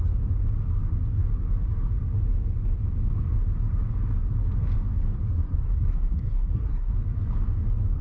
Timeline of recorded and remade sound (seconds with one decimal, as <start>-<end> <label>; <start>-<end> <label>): 0.0-5.3 recorded; 5.3-6.9 remade; 6.9-8.0 recorded